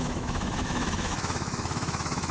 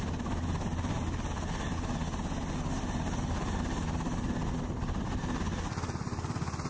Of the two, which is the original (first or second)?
second